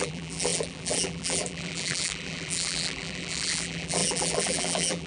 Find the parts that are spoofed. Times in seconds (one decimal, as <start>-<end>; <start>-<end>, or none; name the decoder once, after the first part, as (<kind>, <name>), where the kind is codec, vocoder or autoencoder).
0.0-5.1 (vocoder, BigVGAN v2)